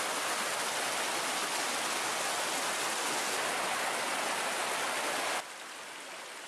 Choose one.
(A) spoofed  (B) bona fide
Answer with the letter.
B